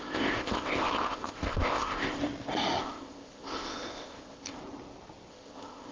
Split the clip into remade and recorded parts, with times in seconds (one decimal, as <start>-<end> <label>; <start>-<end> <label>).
0.0-2.2 remade; 2.2-2.8 recorded; 2.8-4.6 remade; 4.6-5.3 recorded; 5.3-5.9 remade